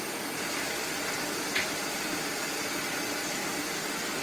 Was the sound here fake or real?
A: real